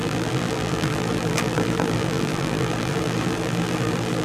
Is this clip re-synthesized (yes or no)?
yes